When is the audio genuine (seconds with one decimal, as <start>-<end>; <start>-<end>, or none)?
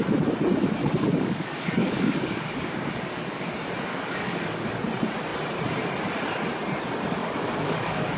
0.0-0.8; 3.5-3.9; 4.8-7.2